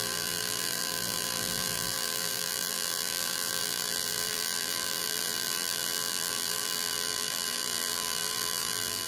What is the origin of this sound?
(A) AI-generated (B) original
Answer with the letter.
A